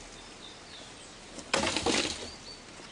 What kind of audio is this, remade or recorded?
recorded